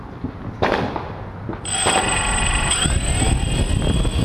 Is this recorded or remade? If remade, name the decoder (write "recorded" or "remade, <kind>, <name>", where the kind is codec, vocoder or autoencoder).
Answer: remade, vocoder, BigVGAN v2